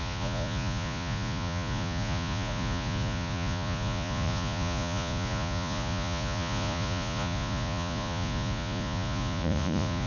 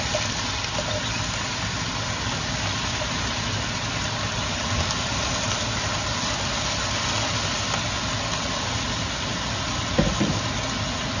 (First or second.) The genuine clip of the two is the second